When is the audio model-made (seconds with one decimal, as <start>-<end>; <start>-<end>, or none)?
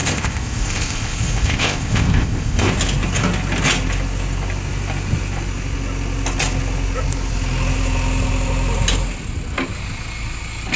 0.0-2.7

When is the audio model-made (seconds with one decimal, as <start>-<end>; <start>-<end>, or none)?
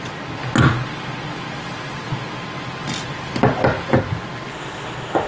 4.5-5.3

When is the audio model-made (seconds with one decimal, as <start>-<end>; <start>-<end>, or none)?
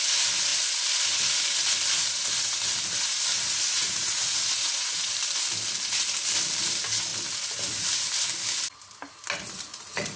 3.3-5.1; 9.7-10.2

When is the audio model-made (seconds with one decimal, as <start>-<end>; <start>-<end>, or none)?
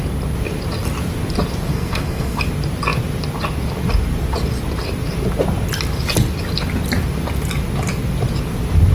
1.7-2.4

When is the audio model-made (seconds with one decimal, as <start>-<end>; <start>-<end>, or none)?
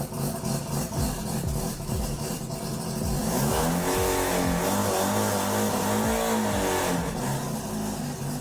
1.7-2.3; 3.2-4.3